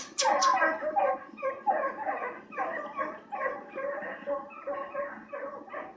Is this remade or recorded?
recorded